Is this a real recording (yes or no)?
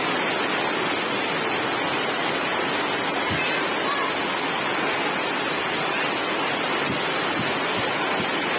yes